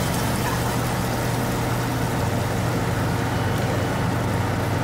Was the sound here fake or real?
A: real